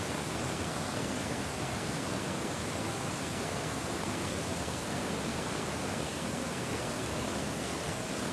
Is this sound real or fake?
fake